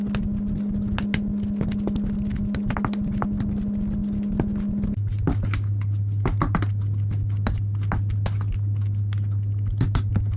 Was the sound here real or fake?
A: real